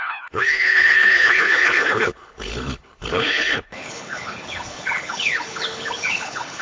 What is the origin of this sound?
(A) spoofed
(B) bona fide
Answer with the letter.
A